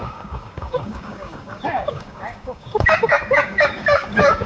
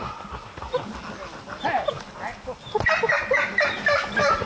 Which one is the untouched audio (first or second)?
second